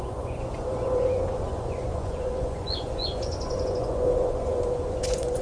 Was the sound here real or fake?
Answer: fake